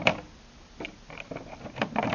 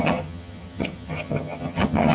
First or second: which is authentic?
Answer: first